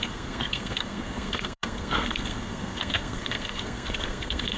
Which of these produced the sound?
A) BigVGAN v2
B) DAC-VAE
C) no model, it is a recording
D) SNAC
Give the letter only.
D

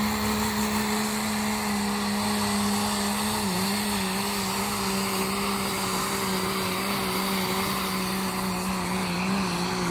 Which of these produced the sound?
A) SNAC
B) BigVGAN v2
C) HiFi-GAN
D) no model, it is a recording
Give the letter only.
D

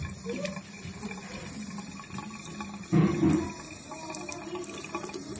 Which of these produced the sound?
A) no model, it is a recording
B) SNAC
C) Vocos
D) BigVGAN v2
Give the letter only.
A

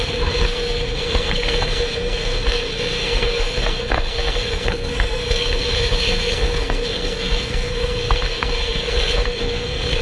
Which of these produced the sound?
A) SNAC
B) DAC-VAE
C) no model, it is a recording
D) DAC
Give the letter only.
A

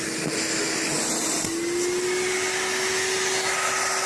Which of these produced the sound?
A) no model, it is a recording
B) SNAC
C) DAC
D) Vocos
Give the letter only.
A